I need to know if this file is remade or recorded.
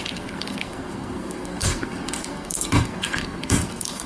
remade